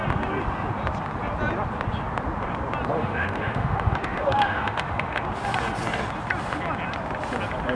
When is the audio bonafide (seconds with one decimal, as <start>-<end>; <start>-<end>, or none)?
0.0-2.9; 5.2-7.8